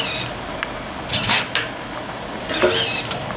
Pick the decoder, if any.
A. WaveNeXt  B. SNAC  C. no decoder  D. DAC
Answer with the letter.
C